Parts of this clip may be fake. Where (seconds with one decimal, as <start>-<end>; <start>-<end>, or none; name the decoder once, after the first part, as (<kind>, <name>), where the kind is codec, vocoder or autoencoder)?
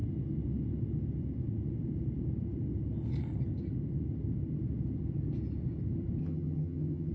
6.2-7.1 (vocoder, HiFi-GAN)